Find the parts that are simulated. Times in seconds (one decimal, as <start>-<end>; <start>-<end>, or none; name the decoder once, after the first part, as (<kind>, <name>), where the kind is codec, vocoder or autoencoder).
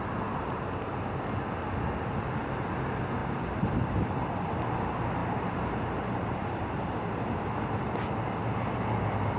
3.2-4.1 (vocoder, BigVGAN v2); 5.2-7.6